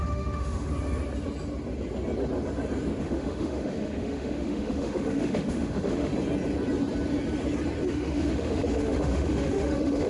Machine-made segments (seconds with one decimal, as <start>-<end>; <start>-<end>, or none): 0.0-0.7; 3.0-6.1; 7.9-10.1

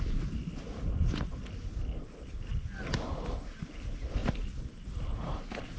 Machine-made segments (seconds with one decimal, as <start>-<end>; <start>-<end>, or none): none

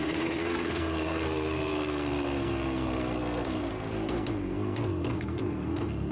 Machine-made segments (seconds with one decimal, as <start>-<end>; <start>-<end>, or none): 0.0-6.1

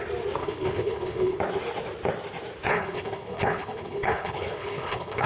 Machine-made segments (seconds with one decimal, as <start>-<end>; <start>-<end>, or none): 0.4-1.4; 2.7-5.3

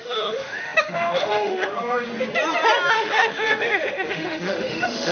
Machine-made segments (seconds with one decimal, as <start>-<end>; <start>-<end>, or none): 0.0-2.1; 2.9-5.1